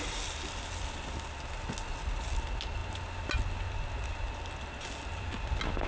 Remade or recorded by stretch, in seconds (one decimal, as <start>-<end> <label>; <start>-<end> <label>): 0.0-5.9 recorded